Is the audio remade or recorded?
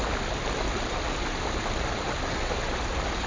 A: recorded